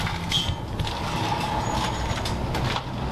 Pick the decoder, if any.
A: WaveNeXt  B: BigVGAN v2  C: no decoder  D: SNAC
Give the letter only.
C